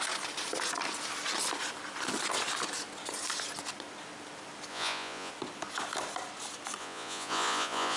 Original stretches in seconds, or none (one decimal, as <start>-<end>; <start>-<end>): 0.0-4.7; 5.3-6.8